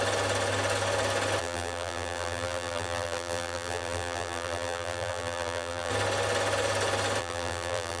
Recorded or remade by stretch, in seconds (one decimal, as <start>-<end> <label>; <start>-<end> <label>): 0.0-1.4 recorded; 1.4-5.9 remade; 5.9-7.2 recorded; 7.2-8.0 remade